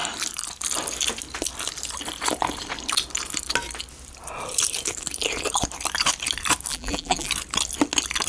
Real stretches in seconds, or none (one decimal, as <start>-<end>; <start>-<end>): 0.0-6.7; 7.3-8.3

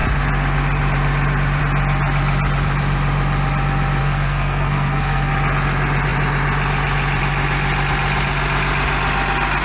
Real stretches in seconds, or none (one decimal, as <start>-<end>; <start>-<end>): 0.0-4.0; 5.3-9.6

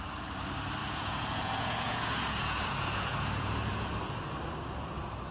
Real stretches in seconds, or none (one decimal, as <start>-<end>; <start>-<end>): 0.0-0.8; 3.9-5.3